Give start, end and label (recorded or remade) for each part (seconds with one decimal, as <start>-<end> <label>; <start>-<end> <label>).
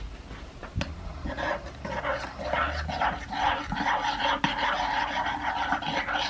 0.0-6.3 recorded